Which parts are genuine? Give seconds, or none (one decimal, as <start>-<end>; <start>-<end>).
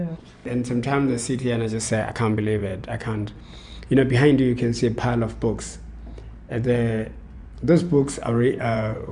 2.7-6.5